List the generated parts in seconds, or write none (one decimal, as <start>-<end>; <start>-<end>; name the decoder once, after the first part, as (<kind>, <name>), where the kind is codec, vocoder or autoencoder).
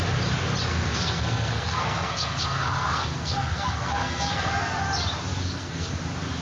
0.7-4.5 (codec, SNAC); 5.4-6.0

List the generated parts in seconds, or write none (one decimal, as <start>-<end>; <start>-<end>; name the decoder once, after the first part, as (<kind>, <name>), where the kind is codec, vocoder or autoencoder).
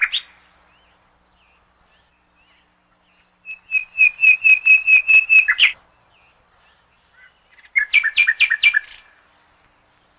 none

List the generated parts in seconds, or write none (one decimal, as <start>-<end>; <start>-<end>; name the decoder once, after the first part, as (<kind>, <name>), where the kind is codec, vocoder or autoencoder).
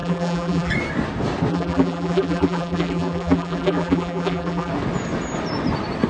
0.0-0.7 (vocoder, BigVGAN v2); 1.5-4.7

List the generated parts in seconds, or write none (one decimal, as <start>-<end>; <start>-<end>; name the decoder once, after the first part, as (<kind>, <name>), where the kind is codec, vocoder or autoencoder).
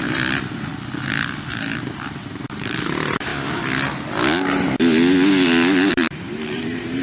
0.0-0.7 (vocoder, BigVGAN v2); 1.9-3.3; 5.9-7.0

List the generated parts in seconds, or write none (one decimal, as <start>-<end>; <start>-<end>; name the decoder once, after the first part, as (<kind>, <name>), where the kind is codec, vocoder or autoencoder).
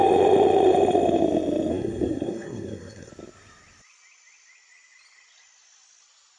1.7-3.1 (codec, SNAC)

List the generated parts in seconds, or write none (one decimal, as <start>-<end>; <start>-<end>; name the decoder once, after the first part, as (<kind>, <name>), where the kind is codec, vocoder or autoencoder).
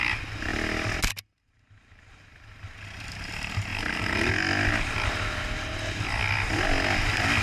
none